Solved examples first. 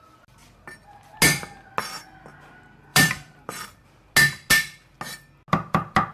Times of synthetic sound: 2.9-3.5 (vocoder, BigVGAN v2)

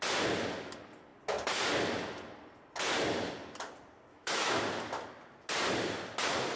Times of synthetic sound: 4.1-4.6 (autoencoder, DAC-VAE)

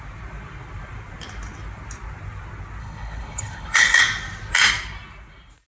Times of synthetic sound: 2.8-4.0 (codec, HILCodec)

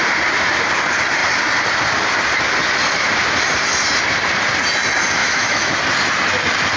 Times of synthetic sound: 5.2-5.8 (autoencoder, DAC-VAE)

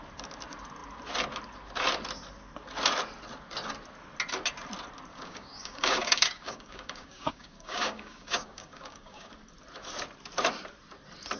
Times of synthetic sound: 5.1-9.3 (codec, DAC)